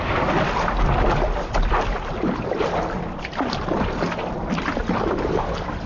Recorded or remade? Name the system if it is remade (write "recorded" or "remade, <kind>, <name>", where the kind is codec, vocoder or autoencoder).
recorded